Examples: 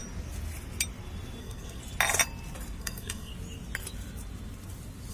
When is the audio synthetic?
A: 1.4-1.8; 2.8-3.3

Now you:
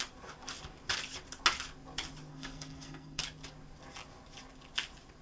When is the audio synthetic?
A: 2.3-3.2